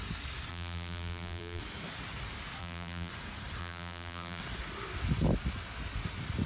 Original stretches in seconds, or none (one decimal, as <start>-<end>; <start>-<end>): 0.0-0.5; 1.6-2.6; 3.1-3.6; 4.4-6.5